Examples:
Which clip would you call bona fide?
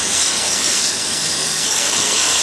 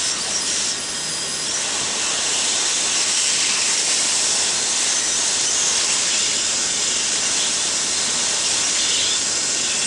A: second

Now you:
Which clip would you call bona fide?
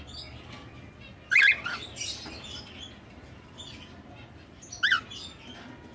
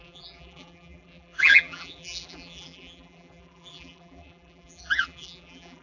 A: first